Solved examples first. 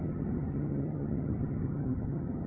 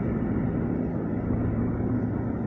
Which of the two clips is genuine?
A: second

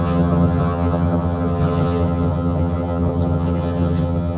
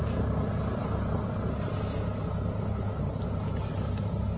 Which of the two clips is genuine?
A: second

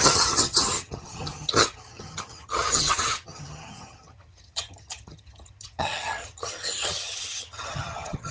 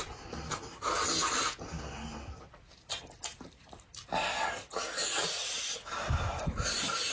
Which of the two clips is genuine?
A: second